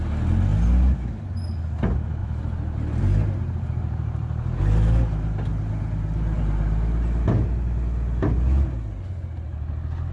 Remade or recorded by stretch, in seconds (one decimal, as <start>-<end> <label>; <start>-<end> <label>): 0.0-2.2 recorded; 2.2-4.6 remade; 4.6-5.5 recorded; 5.5-6.4 remade; 6.4-10.1 recorded